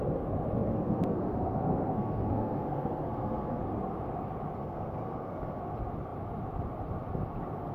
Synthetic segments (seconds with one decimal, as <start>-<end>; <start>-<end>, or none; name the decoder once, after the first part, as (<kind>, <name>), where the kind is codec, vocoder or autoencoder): 0.7-3.6 (codec, SNAC); 4.6-5.6